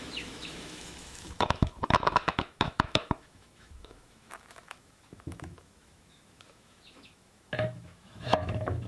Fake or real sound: fake